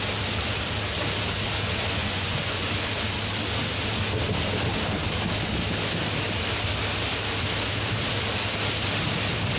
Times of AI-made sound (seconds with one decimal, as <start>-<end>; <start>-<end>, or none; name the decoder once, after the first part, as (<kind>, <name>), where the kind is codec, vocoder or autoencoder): 2.0-2.7 (vocoder, Vocos)